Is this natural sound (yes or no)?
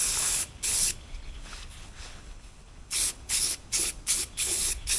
no